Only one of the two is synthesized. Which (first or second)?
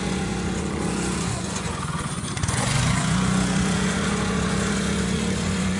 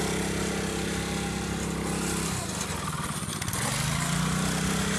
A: first